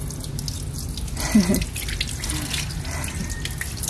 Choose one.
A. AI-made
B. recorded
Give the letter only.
B